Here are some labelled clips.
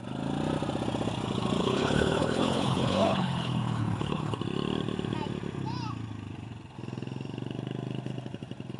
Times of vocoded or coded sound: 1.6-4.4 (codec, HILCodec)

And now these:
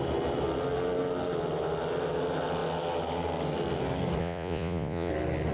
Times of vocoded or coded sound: 4.2-5.1 (vocoder, Vocos)

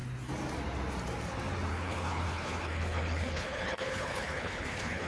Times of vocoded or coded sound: 1.7-5.1 (codec, HILCodec)